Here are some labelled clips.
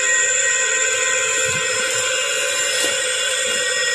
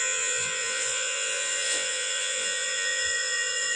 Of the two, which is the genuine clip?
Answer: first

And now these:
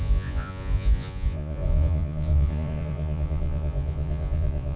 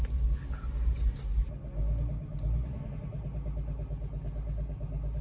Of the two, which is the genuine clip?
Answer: second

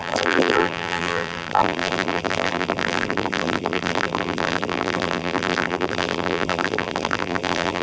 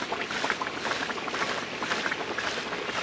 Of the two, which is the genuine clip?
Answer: second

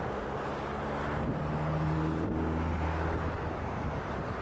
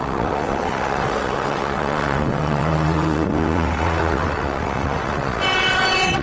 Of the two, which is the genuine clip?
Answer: first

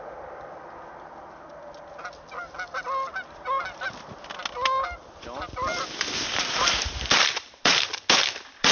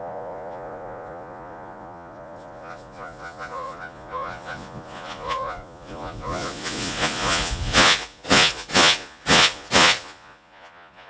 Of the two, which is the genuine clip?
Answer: first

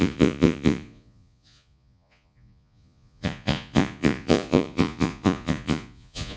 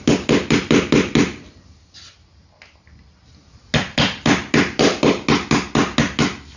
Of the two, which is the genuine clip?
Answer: second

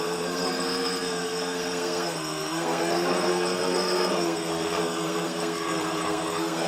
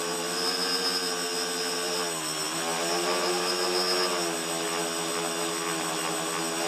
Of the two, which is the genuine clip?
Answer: second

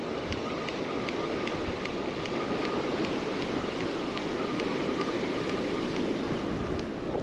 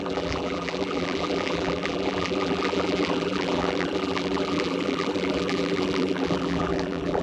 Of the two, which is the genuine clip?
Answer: first